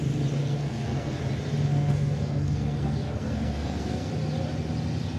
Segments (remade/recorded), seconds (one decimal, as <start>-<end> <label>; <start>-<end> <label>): 0.0-0.4 recorded; 0.4-1.2 remade; 1.2-1.7 recorded; 1.7-4.1 remade; 4.1-5.2 recorded